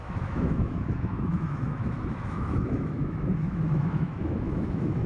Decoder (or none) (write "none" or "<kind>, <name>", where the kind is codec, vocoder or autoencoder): autoencoder, DAC-VAE